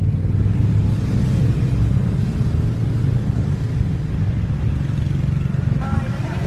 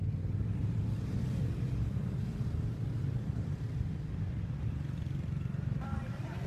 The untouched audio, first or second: first